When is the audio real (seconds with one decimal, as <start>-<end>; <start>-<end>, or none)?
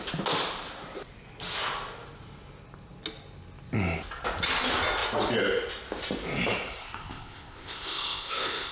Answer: 0.0-6.8